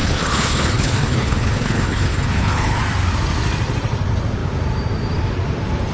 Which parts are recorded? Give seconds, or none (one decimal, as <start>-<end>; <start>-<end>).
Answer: 2.8-5.9